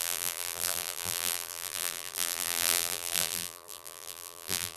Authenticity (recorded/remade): remade